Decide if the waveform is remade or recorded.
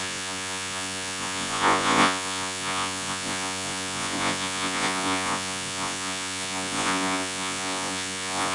remade